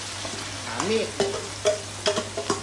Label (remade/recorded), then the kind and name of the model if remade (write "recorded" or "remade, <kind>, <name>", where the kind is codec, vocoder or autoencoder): recorded